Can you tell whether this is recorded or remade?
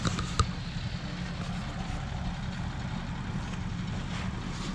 recorded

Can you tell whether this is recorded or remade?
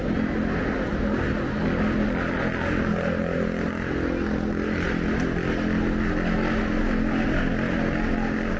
recorded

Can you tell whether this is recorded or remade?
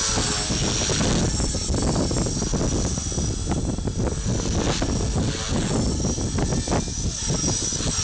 recorded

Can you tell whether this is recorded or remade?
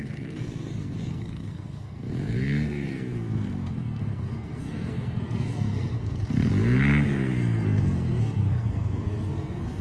remade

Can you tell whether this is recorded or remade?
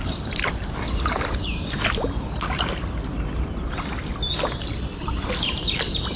recorded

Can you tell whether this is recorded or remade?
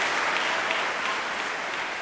recorded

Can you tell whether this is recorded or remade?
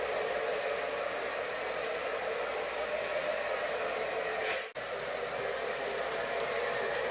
recorded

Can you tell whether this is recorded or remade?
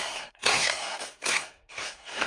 remade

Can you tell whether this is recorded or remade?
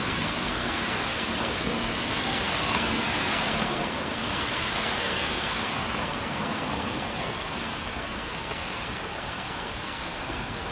remade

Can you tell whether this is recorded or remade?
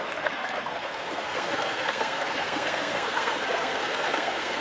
remade